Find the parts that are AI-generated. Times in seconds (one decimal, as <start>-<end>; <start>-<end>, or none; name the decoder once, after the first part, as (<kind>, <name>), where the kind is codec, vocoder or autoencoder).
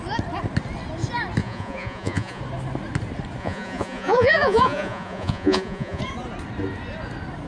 1.4-2.4 (vocoder, Vocos); 3.4-6.0